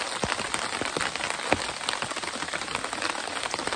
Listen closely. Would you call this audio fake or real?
real